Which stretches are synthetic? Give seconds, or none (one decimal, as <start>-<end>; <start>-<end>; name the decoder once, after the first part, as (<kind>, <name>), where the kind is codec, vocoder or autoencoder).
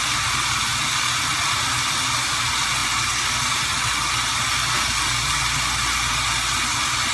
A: none